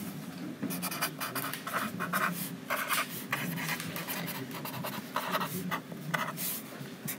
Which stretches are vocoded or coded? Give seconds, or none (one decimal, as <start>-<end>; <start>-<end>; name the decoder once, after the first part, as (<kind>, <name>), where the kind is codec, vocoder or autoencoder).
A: 2.1-3.3 (vocoder, BigVGAN v2)